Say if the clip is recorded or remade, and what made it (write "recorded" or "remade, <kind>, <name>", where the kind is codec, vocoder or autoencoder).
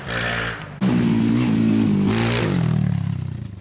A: recorded